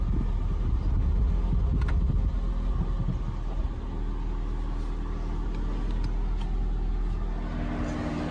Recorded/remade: recorded